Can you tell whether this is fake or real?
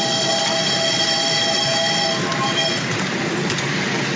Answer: real